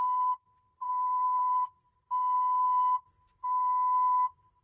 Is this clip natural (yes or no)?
yes